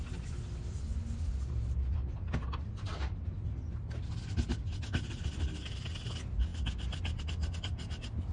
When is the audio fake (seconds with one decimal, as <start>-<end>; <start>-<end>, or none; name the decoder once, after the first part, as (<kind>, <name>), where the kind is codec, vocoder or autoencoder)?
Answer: none